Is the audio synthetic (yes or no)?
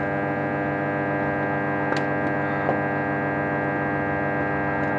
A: no